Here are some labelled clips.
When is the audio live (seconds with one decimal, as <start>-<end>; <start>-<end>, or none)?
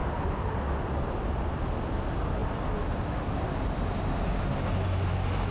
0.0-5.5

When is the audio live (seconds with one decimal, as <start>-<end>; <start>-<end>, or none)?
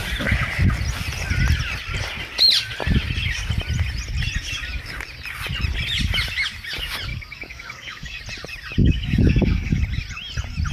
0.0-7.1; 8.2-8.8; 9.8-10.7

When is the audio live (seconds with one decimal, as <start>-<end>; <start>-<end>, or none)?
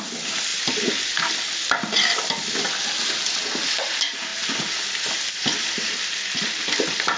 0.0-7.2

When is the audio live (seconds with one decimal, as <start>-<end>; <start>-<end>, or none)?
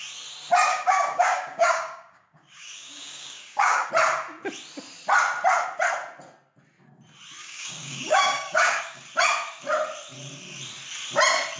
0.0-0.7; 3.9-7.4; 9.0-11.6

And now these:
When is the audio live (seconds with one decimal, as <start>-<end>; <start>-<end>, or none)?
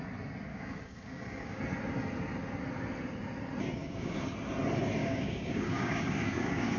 0.0-0.5; 1.6-3.8; 4.3-5.0